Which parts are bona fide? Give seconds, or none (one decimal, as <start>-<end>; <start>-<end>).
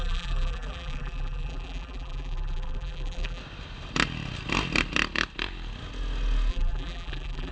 3.4-6.5